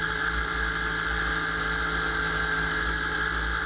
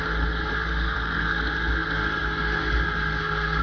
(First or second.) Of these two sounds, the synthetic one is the second